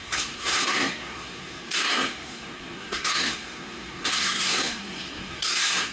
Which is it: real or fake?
fake